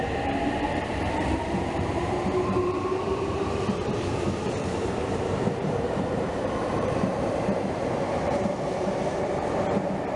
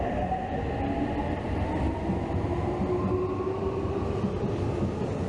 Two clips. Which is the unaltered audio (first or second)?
second